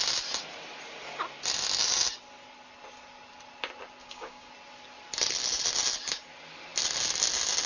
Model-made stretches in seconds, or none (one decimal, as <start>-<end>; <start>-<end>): 4.0-4.5